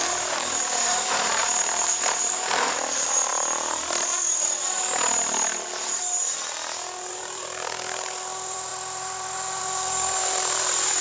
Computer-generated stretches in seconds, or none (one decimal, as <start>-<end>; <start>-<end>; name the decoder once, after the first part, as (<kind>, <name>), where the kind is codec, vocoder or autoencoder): 0.0-3.3 (vocoder, BigVGAN v2); 7.1-11.0